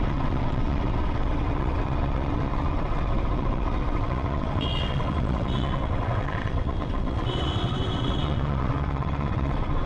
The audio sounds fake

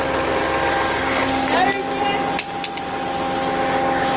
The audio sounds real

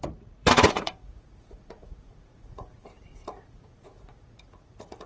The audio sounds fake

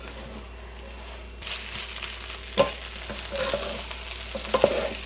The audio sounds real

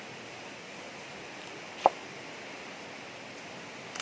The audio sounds real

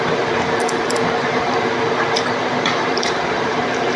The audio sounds fake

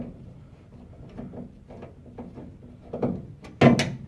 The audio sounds real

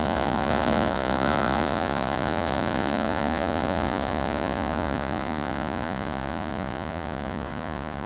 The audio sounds fake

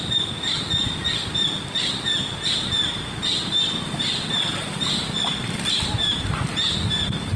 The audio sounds real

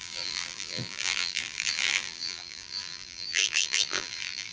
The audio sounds fake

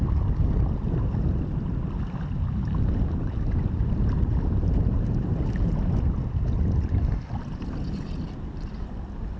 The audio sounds real